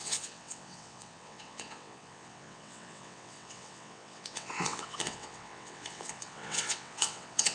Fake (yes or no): yes